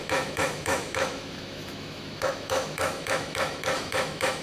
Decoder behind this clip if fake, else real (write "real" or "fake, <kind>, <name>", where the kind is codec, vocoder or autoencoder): fake, autoencoder, DAC-VAE